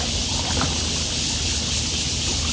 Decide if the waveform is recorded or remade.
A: recorded